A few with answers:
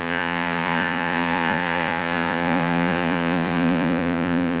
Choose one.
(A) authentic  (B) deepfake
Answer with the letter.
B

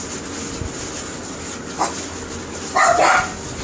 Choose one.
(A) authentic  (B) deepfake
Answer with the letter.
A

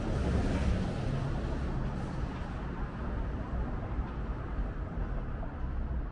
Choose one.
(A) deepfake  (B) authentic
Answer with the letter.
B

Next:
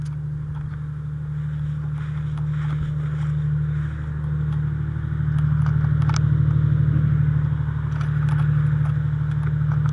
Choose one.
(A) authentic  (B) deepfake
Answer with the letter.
A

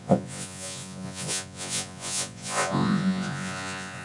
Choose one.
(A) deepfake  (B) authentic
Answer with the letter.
A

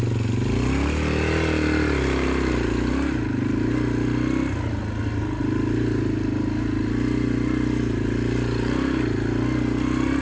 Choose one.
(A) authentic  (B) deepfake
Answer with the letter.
A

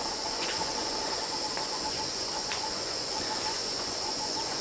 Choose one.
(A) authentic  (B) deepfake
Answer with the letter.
B